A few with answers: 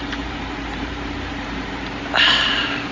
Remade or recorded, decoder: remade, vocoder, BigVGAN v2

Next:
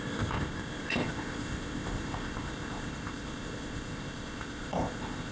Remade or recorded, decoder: remade, codec, ZipCodec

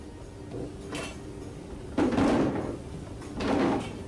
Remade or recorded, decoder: recorded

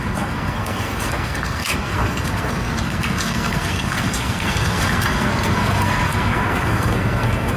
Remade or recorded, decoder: remade, codec, SNAC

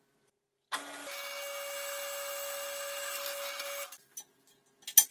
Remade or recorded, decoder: recorded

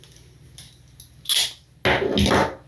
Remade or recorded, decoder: recorded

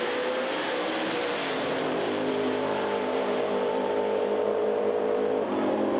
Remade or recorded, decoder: remade, vocoder, BigVGAN v2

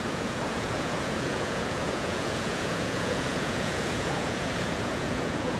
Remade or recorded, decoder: remade, vocoder, Vocos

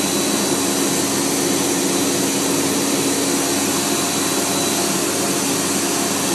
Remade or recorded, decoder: recorded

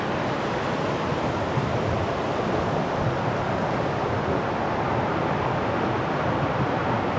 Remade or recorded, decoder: recorded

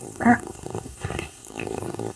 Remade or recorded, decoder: remade, codec, SNAC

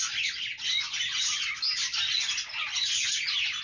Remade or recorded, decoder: recorded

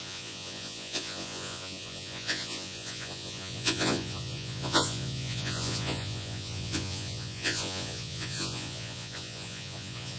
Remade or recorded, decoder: remade, vocoder, Vocos